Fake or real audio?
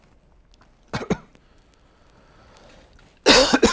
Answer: real